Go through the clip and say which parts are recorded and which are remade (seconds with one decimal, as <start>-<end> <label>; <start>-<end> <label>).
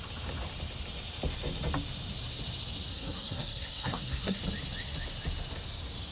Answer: 0.0-2.9 recorded; 2.9-4.4 remade; 4.4-6.1 recorded